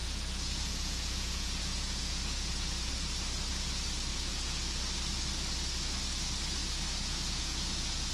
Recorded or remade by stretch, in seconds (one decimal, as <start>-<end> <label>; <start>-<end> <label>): 0.0-2.9 remade; 2.9-4.1 recorded; 4.1-4.8 remade; 4.8-6.6 recorded; 6.6-8.1 remade